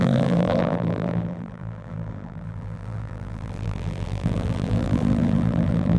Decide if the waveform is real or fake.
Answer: fake